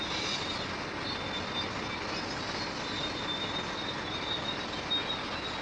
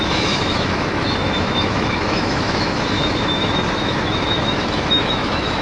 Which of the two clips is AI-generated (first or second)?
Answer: second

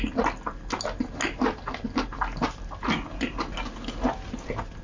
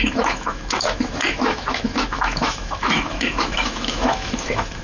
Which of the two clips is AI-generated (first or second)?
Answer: second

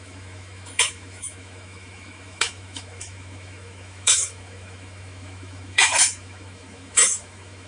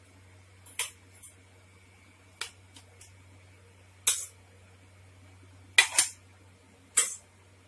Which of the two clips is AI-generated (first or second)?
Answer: first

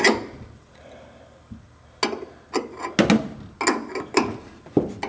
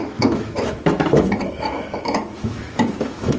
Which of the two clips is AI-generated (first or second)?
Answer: second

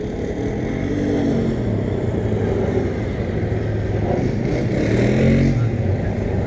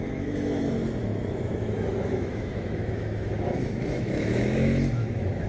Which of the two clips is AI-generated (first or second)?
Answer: second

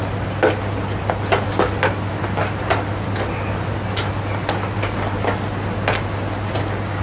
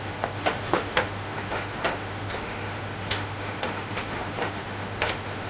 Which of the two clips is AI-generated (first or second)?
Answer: second